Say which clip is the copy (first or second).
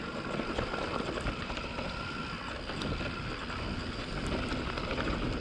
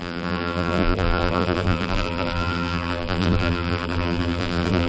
second